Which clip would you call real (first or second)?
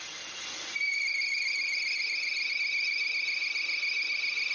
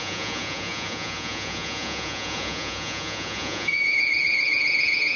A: first